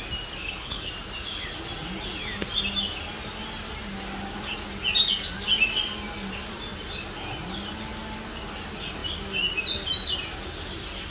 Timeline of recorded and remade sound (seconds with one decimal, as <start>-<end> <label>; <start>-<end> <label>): 0.0-0.4 recorded; 0.4-0.9 remade; 0.9-11.1 recorded